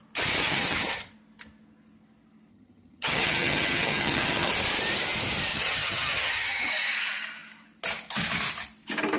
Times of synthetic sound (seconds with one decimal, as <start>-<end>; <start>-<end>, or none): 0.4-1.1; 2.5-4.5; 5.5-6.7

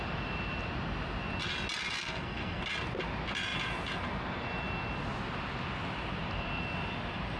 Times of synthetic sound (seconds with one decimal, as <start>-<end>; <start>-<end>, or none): 2.0-2.6

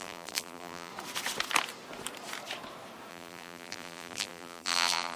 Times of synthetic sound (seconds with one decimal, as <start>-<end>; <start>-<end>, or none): 0.0-0.9; 3.1-5.2

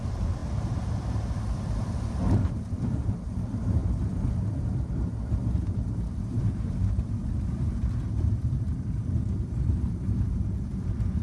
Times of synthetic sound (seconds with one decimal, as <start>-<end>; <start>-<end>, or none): 0.0-3.8; 4.3-11.2

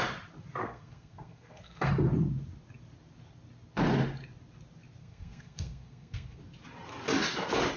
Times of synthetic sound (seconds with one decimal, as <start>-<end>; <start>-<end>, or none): 0.6-1.9; 5.0-6.4

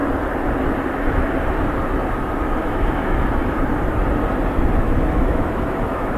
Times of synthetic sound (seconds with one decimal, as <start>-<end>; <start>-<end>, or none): 2.6-3.4; 5.0-6.2